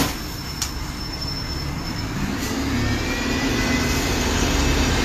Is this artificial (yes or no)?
no